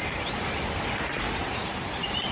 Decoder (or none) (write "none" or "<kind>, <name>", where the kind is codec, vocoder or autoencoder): none